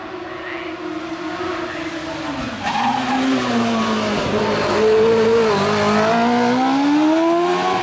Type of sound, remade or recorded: recorded